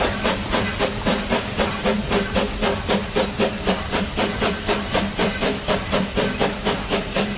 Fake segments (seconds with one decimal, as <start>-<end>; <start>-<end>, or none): none